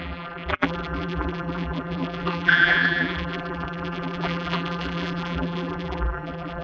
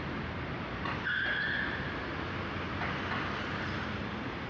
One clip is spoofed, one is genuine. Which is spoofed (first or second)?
first